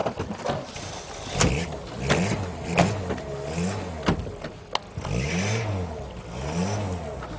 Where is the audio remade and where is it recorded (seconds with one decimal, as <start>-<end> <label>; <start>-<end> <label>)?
0.0-7.4 recorded